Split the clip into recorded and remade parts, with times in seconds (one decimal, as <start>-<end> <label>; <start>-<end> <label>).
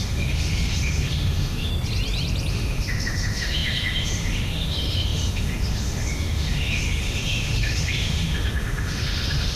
0.0-1.7 remade; 1.7-2.5 recorded; 2.5-9.6 remade